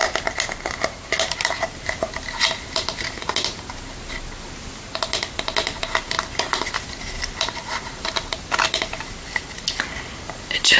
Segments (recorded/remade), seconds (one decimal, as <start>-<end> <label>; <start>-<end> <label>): 0.0-10.8 recorded